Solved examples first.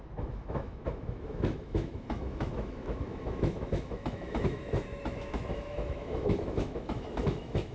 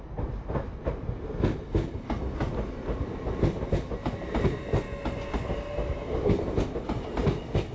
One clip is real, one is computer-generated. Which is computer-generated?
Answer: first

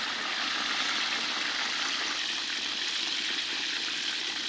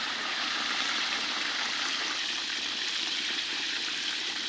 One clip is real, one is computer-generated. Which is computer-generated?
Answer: second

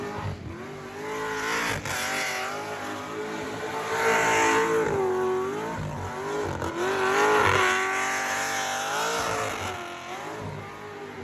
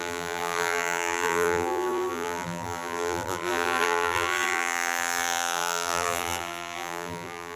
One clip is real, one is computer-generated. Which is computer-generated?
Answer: second